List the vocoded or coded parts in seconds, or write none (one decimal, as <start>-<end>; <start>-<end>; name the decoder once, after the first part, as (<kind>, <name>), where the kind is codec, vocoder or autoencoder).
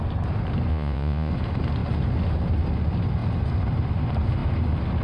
0.7-1.3 (vocoder, Vocos)